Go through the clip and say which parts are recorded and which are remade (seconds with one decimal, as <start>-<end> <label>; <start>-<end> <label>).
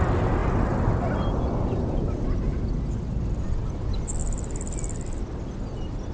0.0-6.1 recorded